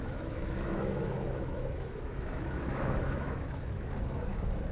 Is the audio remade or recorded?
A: remade